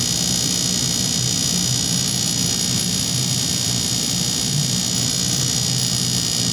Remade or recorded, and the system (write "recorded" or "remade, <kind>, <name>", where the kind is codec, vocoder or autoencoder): recorded